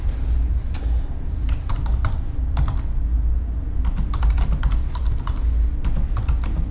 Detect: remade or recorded recorded